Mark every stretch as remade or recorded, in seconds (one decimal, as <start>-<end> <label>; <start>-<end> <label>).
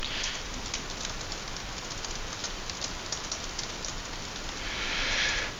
0.0-5.6 recorded